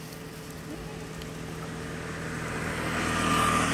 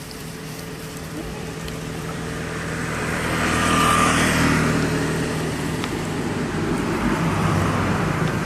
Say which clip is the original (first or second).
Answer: first